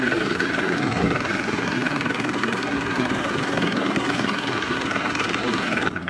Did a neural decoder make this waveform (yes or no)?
yes